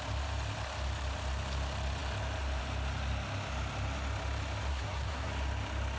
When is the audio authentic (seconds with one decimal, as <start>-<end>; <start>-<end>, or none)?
0.0-4.7; 5.3-6.0